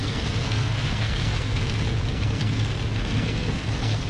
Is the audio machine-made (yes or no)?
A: yes